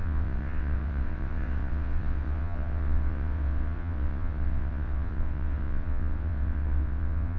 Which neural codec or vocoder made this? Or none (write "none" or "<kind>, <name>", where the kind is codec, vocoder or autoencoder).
vocoder, WaveNeXt